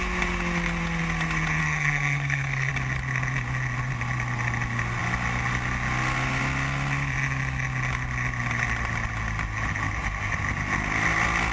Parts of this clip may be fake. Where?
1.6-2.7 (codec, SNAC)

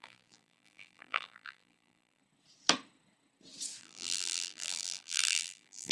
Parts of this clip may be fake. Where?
0.0-2.2 (vocoder, BigVGAN v2); 3.8-5.9

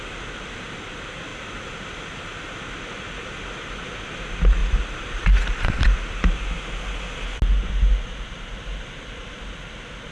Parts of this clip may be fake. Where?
4.6-6.3 (vocoder, BigVGAN v2)

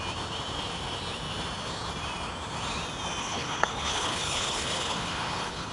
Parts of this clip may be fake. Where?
3.2-5.7 (codec, HILCodec)

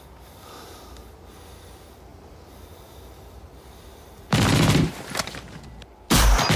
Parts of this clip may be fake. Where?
2.1-5.7 (vocoder, BigVGAN v2)

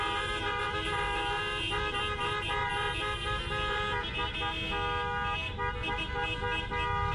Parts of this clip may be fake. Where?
none

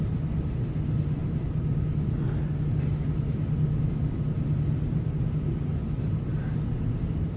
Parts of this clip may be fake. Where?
none